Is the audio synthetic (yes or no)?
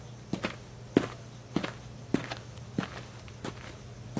no